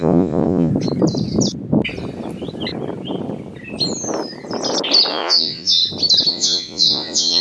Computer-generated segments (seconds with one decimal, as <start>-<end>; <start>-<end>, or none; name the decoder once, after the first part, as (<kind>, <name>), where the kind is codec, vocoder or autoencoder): 0.0-0.7 (vocoder, Vocos); 5.1-5.8; 6.3-7.4